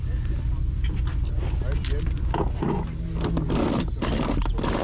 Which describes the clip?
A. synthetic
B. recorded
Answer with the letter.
B